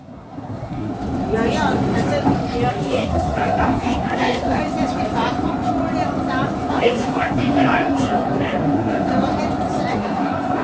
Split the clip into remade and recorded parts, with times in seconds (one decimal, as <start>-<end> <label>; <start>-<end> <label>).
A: 0.0-0.9 remade; 0.9-2.7 recorded; 2.7-4.6 remade; 4.6-6.7 recorded; 6.7-9.1 remade; 9.1-9.9 recorded; 9.9-10.6 remade